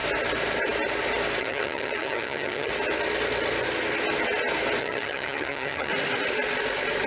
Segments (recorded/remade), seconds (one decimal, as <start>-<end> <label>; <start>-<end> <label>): 0.0-1.4 recorded; 1.4-2.7 remade; 2.7-4.8 recorded; 4.8-5.9 remade; 5.9-7.1 recorded